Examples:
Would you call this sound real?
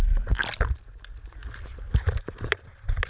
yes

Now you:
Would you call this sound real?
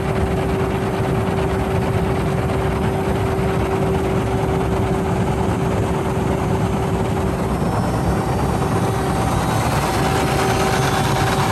yes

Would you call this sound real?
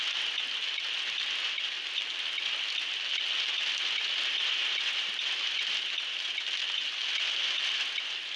yes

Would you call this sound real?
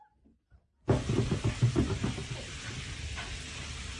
yes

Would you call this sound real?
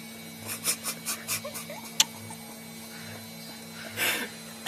yes